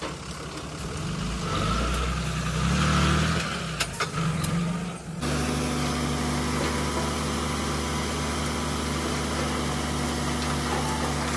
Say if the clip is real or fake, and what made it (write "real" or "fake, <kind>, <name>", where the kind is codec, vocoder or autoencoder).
real